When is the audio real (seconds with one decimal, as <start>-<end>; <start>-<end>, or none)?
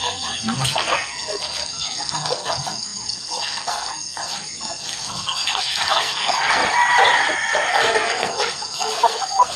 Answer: 6.6-7.7